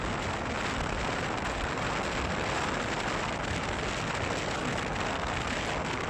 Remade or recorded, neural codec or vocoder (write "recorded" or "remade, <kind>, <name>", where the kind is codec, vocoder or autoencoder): recorded